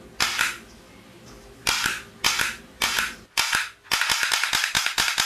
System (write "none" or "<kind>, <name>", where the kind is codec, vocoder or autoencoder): none